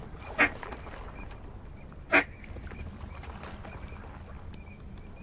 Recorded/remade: recorded